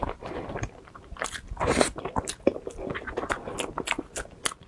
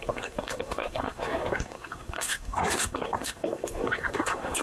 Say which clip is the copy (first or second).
second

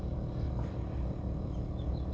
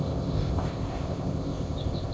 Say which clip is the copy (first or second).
second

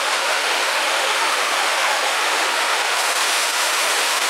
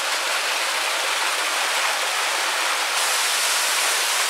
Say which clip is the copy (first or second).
first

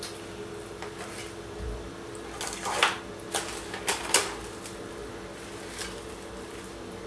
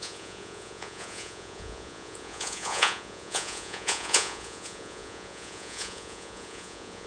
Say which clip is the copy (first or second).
second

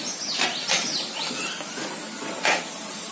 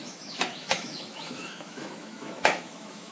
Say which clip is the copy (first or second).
second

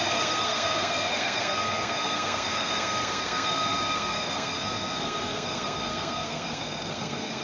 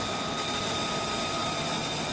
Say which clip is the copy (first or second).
first